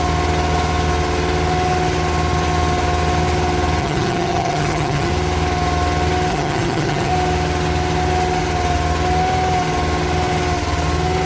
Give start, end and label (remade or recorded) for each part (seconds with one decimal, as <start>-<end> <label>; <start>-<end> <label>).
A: 0.0-3.8 recorded; 3.8-5.1 remade; 5.1-6.3 recorded; 6.3-7.1 remade; 7.1-11.3 recorded